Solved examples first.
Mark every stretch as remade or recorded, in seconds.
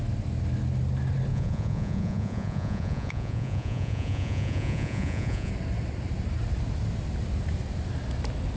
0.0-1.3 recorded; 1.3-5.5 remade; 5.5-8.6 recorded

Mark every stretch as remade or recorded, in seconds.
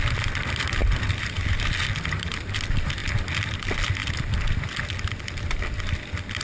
0.0-6.4 recorded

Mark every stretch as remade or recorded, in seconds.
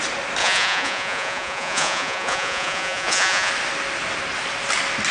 0.0-0.4 recorded; 0.4-3.5 remade; 3.5-5.1 recorded